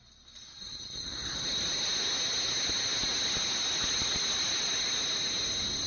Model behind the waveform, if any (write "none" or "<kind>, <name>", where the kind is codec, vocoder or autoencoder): none